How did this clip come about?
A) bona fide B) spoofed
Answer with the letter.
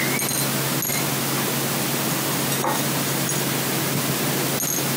A